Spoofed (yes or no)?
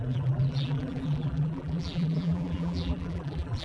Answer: yes